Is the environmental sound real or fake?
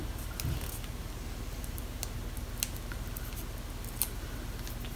real